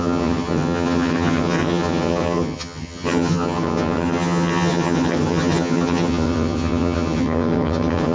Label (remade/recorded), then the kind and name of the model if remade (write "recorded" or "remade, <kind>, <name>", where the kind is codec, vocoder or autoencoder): remade, vocoder, HiFi-GAN